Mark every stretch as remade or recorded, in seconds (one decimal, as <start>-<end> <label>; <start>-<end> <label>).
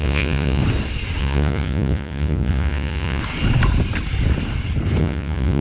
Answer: 0.0-0.6 remade; 0.6-1.2 recorded; 1.2-3.2 remade; 3.2-5.0 recorded; 5.0-5.6 remade